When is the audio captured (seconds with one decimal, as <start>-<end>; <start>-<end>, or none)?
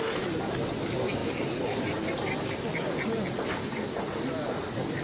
0.0-5.0